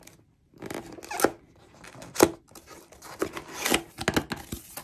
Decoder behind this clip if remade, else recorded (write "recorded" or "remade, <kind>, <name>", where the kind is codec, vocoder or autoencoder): recorded